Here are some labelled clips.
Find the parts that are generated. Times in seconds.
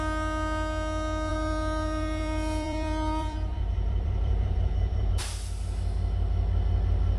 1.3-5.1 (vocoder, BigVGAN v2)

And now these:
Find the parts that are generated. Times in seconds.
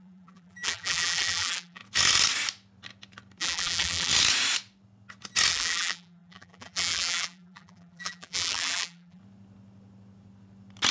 0.0-1.8 (vocoder, BigVGAN v2); 3.4-4.1; 5.5-9.2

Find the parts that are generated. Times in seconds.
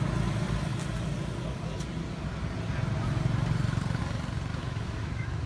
4.5-5.5 (autoencoder, DAC-VAE)